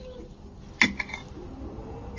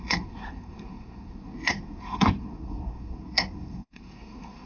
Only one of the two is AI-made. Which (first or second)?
second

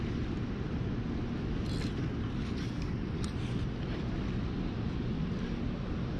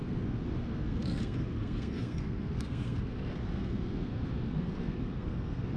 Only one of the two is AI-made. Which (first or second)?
second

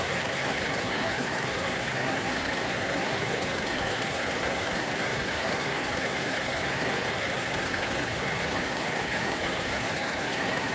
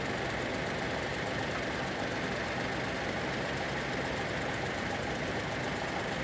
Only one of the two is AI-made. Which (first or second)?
first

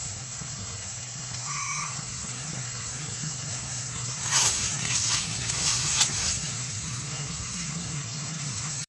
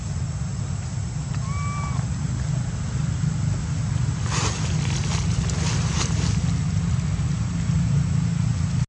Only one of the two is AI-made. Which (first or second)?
first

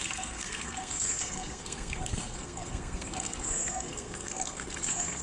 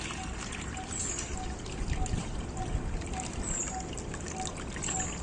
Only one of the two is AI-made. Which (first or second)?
first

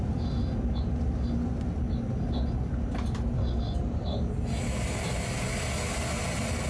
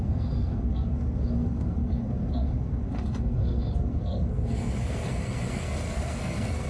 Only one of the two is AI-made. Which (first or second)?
second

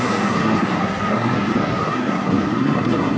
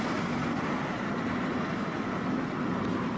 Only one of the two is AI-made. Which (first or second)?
first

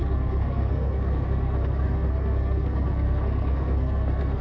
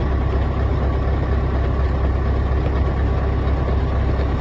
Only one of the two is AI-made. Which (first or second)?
first